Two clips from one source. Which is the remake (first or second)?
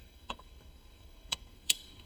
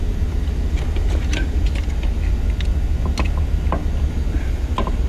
first